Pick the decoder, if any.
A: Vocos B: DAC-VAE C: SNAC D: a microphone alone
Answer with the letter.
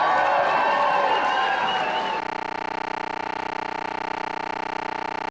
D